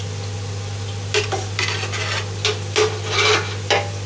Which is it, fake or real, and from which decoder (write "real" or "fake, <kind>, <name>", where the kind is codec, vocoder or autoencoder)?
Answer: real